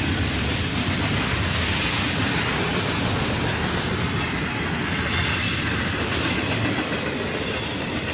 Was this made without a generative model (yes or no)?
yes